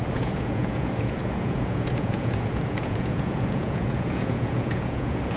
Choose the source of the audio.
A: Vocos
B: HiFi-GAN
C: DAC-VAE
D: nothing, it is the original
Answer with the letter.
A